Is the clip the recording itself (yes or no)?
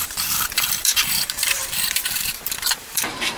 no